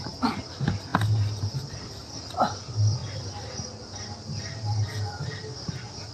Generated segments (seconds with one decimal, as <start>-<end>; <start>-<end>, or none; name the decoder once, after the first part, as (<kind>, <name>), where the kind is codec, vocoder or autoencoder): none

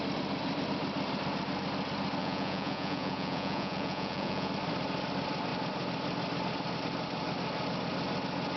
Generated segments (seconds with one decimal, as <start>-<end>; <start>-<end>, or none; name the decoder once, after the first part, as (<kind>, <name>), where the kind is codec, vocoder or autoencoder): 2.2-4.5 (vocoder, Vocos)

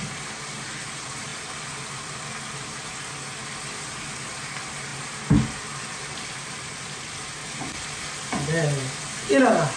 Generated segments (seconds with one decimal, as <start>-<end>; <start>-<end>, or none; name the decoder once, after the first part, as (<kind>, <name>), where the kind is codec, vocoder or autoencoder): none

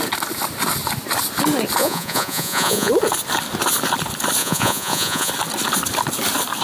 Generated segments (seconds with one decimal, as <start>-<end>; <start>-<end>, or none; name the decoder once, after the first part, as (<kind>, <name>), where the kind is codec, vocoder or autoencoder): 1.8-2.9 (vocoder, Vocos); 4.4-5.3

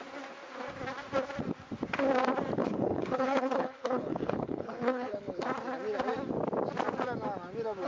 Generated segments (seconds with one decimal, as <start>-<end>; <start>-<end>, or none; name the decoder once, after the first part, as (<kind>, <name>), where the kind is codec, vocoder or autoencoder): 2.6-5.4 (codec, HILCodec)

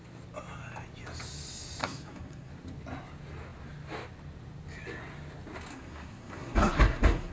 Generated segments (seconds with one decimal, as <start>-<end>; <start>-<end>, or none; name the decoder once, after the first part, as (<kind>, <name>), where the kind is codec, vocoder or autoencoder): 1.8-2.5 (codec, SNAC); 5.7-7.3

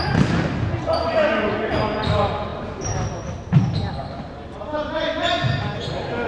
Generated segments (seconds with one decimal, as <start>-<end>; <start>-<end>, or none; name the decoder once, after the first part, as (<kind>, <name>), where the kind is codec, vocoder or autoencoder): none

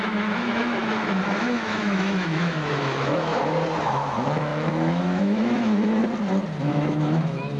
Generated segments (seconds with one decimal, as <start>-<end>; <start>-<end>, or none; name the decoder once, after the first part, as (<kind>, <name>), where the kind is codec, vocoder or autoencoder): 0.0-3.3 (autoencoder, DAC-VAE); 3.8-6.0; 6.6-7.6